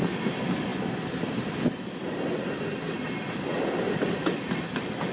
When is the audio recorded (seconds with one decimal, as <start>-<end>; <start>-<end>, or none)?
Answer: 0.0-5.1